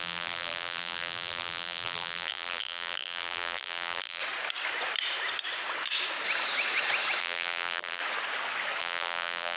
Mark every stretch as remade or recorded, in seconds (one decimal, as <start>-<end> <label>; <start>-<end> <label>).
0.0-4.2 remade; 4.2-7.2 recorded; 7.2-8.0 remade; 8.0-8.8 recorded; 8.8-9.6 remade